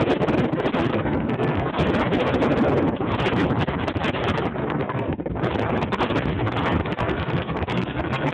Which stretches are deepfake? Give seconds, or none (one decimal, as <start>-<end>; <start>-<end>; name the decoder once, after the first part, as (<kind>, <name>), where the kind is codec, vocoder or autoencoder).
0.9-1.7 (codec, SNAC); 4.6-5.3; 6.8-8.3

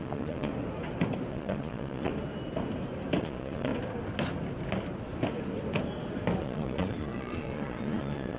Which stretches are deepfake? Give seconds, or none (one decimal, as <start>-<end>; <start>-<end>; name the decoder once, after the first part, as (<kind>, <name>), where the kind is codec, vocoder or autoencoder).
0.0-0.5 (vocoder, Vocos); 1.3-2.1; 3.2-3.7; 6.4-8.4

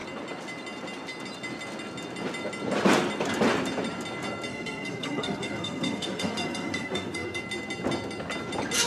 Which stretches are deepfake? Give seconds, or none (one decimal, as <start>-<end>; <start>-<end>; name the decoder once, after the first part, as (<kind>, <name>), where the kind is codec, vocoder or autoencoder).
4.5-7.4 (codec, SNAC)

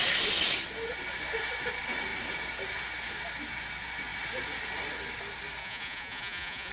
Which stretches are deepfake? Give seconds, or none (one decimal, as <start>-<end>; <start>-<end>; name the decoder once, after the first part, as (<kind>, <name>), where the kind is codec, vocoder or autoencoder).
5.6-6.7 (vocoder, Vocos)